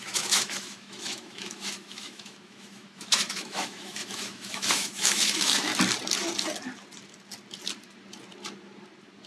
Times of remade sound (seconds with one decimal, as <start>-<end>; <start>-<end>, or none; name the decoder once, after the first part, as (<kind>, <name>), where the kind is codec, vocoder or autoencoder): 0.0-5.7 (autoencoder, DAC-VAE)